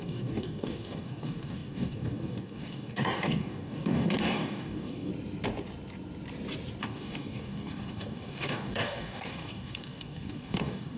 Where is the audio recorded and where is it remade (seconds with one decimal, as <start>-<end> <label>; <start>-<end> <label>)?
0.0-5.1 remade; 5.1-6.8 recorded; 6.8-11.0 remade